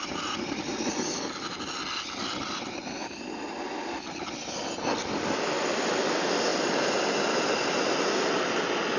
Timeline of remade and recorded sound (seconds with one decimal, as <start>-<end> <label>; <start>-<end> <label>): 0.0-9.0 recorded